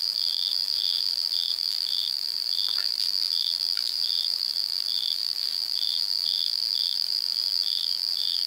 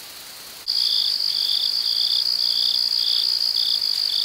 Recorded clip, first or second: second